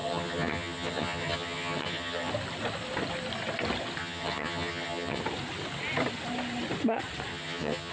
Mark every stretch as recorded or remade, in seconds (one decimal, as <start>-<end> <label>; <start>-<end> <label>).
0.0-2.3 remade; 2.3-4.0 recorded; 4.0-5.2 remade; 5.2-7.3 recorded; 7.3-7.9 remade